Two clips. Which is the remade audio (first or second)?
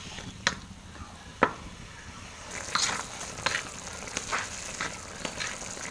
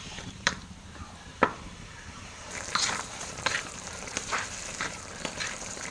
second